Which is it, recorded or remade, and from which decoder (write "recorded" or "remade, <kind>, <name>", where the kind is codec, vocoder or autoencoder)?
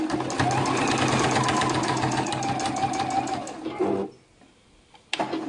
recorded